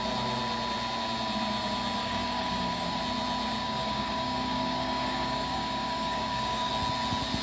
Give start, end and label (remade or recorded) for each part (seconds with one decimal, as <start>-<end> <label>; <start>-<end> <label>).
0.0-2.0 recorded; 2.0-3.0 remade; 3.0-3.6 recorded; 3.6-6.7 remade; 6.7-7.4 recorded